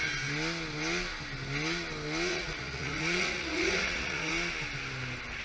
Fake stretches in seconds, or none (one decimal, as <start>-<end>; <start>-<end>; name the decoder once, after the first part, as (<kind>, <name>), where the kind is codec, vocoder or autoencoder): 2.3-4.3 (vocoder, Vocos)